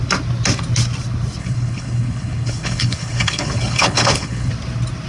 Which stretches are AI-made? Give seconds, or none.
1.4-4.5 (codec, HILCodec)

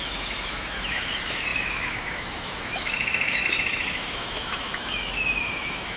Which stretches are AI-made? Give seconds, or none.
0.0-6.0 (autoencoder, DAC-VAE)

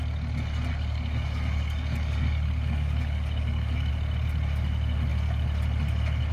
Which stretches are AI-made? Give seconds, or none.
0.7-3.9 (codec, DAC)

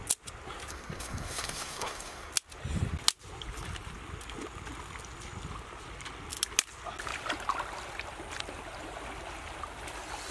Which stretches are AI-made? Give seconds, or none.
0.7-2.3 (codec, SNAC)

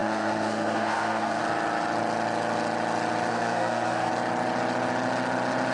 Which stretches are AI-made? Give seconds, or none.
0.0-1.4 (codec, SNAC); 3.3-4.1

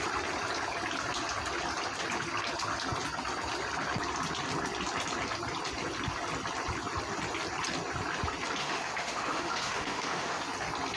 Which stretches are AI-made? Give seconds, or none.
8.6-10.4 (autoencoder, DAC-VAE)

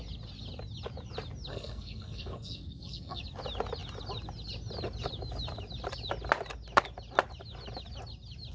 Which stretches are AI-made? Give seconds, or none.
1.5-3.2 (codec, SNAC)

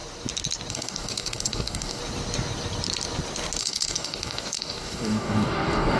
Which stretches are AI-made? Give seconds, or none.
0.7-2.0 (codec, DAC); 3.6-6.0